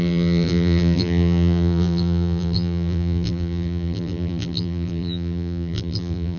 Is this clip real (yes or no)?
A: no